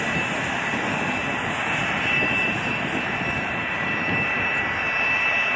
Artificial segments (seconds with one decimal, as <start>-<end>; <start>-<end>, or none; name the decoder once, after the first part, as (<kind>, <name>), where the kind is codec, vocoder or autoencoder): 1.2-4.6 (vocoder, BigVGAN v2)